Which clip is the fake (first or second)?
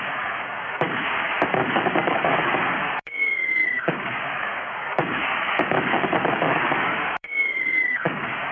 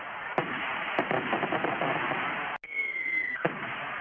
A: first